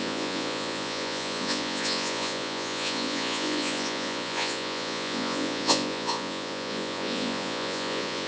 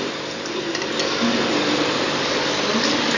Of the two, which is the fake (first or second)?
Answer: first